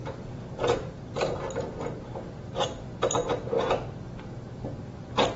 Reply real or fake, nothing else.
real